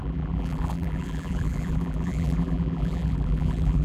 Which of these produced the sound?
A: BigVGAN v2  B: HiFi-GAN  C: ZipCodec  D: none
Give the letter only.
A